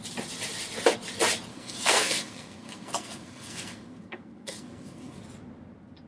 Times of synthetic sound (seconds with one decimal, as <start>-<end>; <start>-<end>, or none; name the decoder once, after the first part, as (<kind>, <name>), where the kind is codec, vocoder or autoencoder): 1.5-5.2 (codec, SNAC)